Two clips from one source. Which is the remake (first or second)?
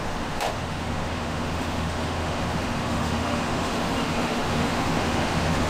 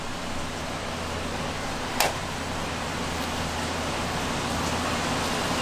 first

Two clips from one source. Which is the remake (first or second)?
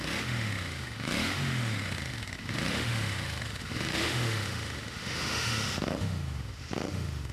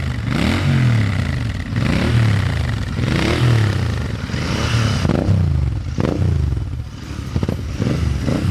first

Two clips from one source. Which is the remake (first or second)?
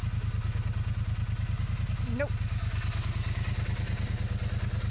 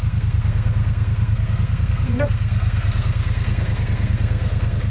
second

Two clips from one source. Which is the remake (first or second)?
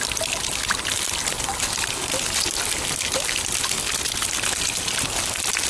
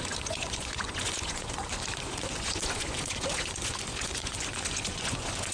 second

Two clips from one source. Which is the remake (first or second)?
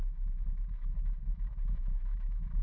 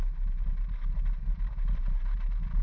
first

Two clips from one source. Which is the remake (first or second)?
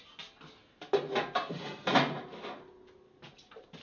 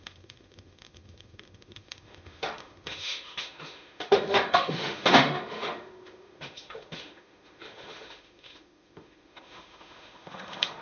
second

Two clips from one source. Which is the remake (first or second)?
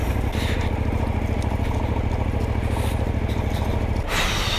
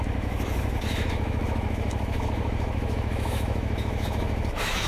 second